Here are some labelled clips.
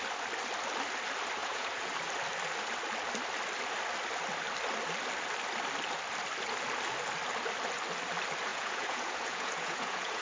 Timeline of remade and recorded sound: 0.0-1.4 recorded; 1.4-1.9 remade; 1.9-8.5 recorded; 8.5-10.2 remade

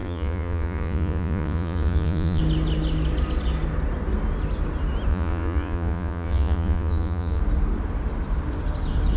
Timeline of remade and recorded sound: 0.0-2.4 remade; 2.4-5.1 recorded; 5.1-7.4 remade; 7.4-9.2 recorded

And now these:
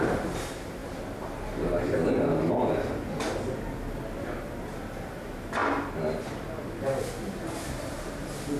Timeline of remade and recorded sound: 0.0-8.6 recorded

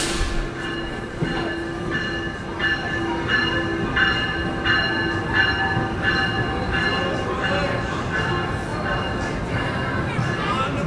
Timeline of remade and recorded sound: 0.0-10.9 recorded

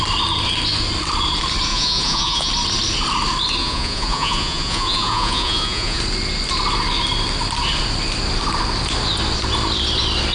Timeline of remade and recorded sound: 0.0-1.7 recorded; 1.7-2.5 remade; 2.5-3.6 recorded; 3.6-6.0 remade; 6.0-10.3 recorded

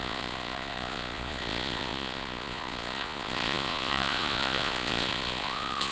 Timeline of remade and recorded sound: 0.0-5.9 remade

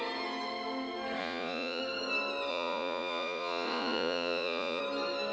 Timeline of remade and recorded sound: 0.0-1.2 recorded; 1.2-1.8 remade; 1.8-2.5 recorded; 2.5-4.8 remade; 4.8-5.3 recorded

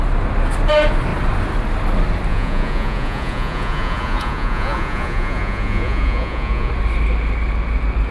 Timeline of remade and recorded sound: 0.0-2.3 recorded; 2.3-6.7 remade; 6.7-8.1 recorded